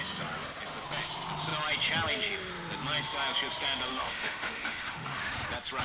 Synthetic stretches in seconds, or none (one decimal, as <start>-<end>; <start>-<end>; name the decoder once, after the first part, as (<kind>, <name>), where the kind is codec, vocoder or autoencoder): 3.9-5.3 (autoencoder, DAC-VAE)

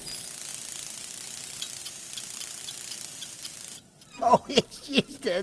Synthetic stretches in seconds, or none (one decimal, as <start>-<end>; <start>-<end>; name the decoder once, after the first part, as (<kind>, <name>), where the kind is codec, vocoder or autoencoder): none

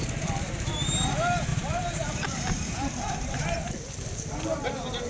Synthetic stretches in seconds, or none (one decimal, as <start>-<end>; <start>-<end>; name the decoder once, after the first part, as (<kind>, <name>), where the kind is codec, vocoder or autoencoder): 1.5-3.6 (vocoder, BigVGAN v2)

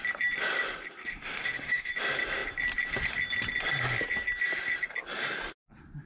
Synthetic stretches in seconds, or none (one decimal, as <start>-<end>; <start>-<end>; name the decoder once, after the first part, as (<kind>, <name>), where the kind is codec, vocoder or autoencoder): 1.0-1.9 (autoencoder, DAC-VAE)